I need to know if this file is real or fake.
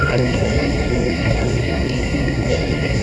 fake